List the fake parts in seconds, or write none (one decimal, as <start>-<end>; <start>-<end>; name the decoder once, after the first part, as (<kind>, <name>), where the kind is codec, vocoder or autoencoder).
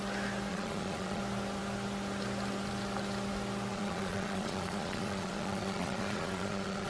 0.5-1.2 (vocoder, Vocos); 3.7-6.9